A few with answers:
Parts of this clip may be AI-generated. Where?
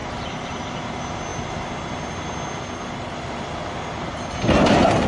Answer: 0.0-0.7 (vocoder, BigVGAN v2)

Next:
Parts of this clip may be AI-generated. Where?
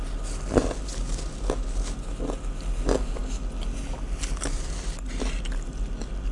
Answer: none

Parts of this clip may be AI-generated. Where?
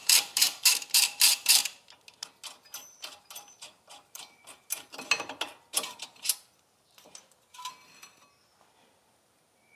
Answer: 0.0-1.9 (vocoder, BigVGAN v2); 2.8-7.7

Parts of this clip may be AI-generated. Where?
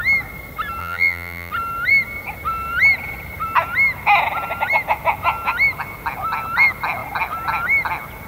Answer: 0.8-1.5 (vocoder, BigVGAN v2)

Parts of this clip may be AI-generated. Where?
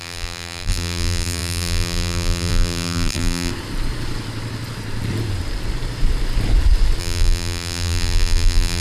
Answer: 0.0-3.5 (vocoder, BigVGAN v2); 7.0-8.8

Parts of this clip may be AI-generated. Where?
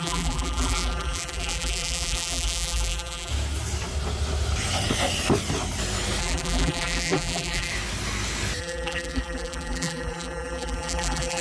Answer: 0.0-3.3 (vocoder, BigVGAN v2); 6.2-7.7; 8.6-11.4